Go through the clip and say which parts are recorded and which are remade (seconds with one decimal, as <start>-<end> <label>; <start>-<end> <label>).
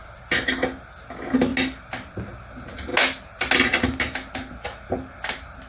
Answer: 0.0-5.7 recorded